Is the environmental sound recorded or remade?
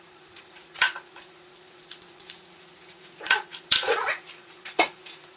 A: remade